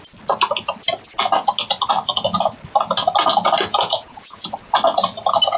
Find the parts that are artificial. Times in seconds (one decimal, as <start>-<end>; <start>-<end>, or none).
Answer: 3.7-4.5